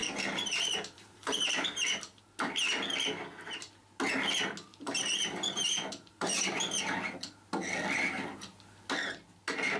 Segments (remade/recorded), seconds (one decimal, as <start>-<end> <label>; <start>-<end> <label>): 0.0-2.2 remade; 2.2-4.7 recorded; 4.7-6.8 remade; 6.8-9.8 recorded